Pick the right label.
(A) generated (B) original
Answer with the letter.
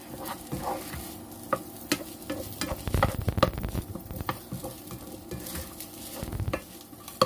B